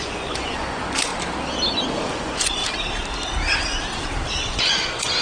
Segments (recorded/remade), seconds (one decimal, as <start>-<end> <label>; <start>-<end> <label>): 0.0-1.1 remade; 1.1-2.1 recorded; 2.1-2.6 remade; 2.6-4.4 recorded; 4.4-5.2 remade